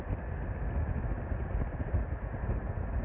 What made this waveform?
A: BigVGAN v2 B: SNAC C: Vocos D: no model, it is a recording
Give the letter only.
D